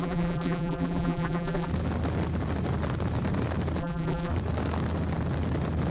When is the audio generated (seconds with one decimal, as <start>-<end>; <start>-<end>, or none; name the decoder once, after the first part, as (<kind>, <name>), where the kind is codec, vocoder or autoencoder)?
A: 0.0-1.7 (vocoder, BigVGAN v2); 3.8-4.3